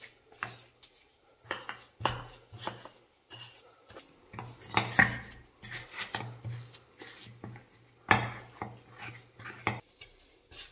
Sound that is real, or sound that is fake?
real